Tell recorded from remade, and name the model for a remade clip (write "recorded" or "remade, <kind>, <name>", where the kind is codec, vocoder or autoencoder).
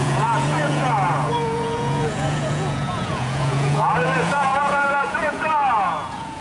remade, vocoder, Vocos